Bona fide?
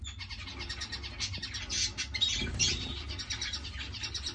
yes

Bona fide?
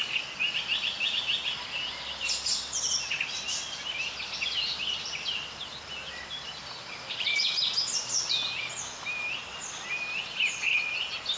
yes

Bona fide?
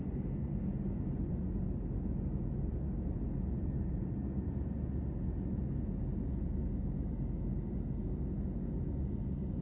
yes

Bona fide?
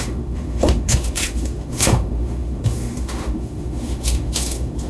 no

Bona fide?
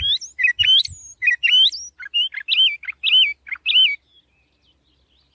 yes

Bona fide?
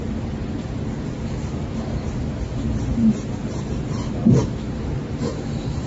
no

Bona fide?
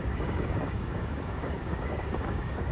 no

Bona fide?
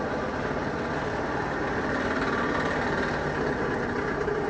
yes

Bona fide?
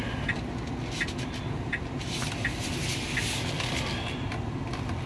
yes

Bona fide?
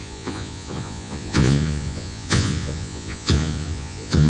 no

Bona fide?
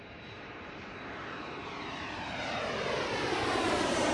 no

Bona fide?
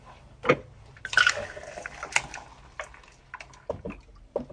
yes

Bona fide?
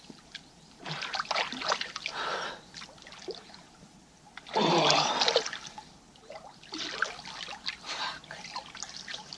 yes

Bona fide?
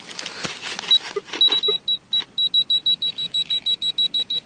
yes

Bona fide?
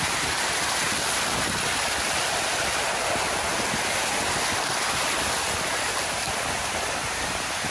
yes